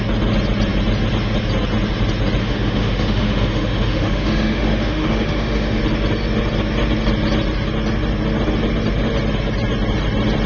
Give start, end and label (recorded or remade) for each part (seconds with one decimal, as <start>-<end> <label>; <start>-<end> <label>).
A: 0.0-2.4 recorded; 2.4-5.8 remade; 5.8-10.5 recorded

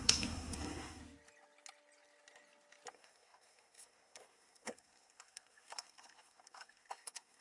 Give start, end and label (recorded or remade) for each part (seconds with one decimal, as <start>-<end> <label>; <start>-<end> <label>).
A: 0.0-1.0 remade; 1.0-2.9 recorded; 2.9-7.4 remade

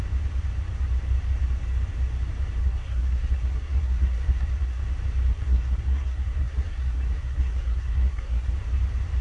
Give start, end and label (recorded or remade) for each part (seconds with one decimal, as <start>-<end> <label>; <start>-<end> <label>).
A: 0.0-2.6 recorded; 2.6-4.8 remade; 4.8-5.3 recorded; 5.3-8.5 remade; 8.5-9.2 recorded

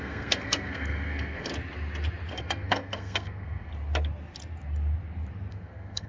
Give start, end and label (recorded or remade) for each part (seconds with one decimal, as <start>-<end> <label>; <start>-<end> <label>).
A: 0.0-1.5 remade; 1.5-2.4 recorded; 2.4-3.7 remade; 3.7-5.5 recorded; 5.5-6.1 remade

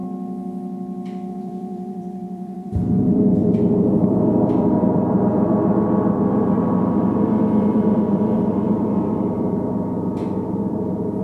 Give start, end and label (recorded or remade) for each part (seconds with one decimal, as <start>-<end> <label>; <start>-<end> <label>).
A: 0.0-1.3 recorded; 1.3-11.2 remade

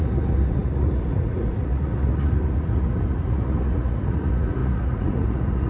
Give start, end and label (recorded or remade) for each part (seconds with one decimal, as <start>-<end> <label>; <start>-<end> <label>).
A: 0.0-5.7 remade